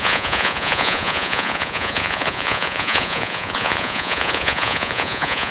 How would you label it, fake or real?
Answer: fake